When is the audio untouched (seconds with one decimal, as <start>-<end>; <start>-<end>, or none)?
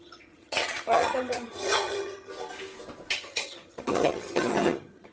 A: 2.3-3.1